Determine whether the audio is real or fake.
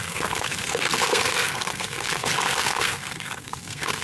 fake